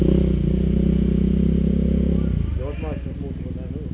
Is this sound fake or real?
real